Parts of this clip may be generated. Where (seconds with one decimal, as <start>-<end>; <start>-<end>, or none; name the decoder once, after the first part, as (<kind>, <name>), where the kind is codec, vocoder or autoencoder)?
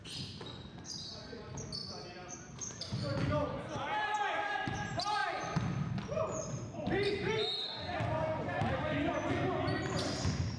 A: none